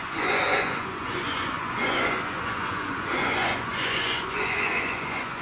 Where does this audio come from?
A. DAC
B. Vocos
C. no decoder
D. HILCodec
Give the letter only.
B